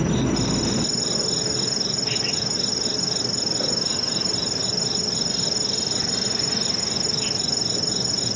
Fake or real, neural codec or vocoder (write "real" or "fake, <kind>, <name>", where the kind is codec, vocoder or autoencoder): fake, vocoder, BigVGAN v2